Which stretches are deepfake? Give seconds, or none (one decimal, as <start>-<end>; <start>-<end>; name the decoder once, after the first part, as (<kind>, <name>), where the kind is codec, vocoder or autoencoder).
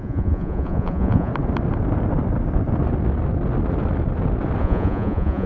0.0-1.3 (vocoder, Vocos); 4.6-5.5